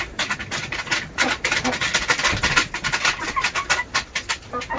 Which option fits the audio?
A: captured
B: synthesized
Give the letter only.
A